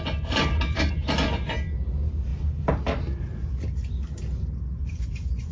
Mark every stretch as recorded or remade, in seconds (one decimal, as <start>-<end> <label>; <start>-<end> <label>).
0.0-5.5 recorded